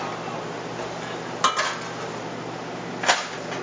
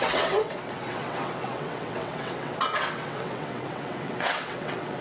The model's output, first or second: second